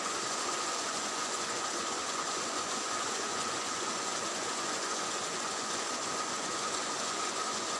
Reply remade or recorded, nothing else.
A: remade